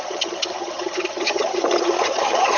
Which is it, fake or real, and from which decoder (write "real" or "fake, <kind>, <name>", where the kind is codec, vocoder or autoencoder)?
fake, vocoder, HiFi-GAN